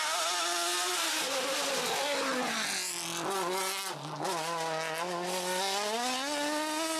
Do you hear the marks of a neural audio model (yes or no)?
no